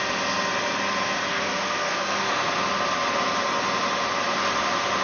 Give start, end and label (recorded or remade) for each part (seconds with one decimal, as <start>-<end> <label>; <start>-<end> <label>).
0.0-1.3 recorded; 1.3-2.6 remade; 2.6-5.0 recorded